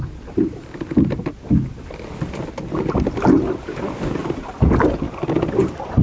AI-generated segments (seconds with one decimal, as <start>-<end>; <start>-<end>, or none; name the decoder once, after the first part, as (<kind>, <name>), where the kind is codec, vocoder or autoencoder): 4.2-5.0 (vocoder, BigVGAN v2)